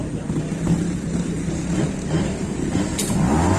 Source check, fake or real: real